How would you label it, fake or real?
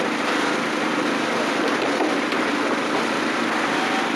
real